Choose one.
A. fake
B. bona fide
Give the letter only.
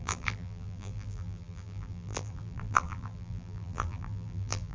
A